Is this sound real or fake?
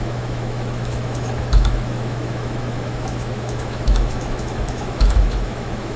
fake